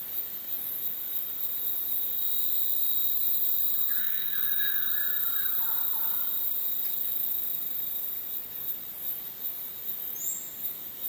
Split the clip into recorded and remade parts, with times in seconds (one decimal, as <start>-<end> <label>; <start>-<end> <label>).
0.0-4.0 recorded; 4.0-4.9 remade; 4.9-11.1 recorded